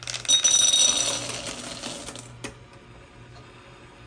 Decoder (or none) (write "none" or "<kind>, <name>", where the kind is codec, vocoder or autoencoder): none